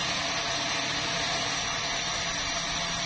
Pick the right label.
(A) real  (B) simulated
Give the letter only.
A